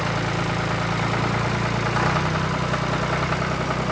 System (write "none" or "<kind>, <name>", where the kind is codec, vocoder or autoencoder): none